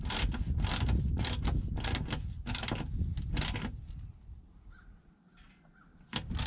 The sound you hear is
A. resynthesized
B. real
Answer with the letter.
B